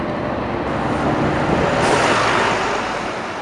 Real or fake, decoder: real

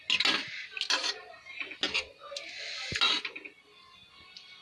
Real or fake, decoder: real